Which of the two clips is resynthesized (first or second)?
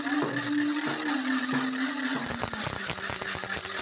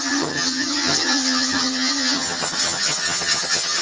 second